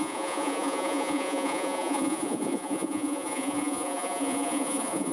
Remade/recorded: remade